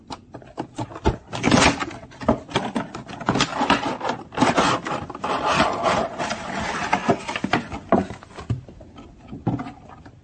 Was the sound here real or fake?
real